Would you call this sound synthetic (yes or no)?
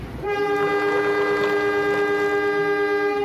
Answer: no